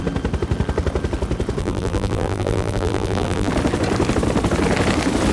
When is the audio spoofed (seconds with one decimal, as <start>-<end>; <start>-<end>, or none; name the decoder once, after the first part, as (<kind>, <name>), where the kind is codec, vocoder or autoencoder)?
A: 1.6-3.5 (vocoder, BigVGAN v2)